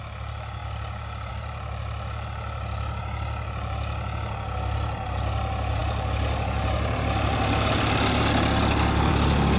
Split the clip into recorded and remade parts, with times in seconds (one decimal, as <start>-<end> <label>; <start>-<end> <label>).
0.0-9.6 recorded